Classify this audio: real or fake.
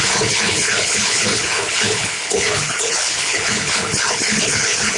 fake